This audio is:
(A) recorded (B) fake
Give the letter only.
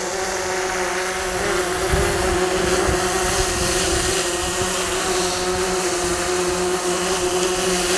A